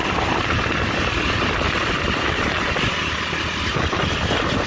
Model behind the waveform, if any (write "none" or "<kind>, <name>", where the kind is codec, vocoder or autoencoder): none